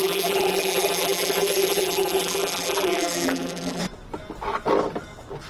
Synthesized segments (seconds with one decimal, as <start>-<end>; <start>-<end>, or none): 0.0-3.8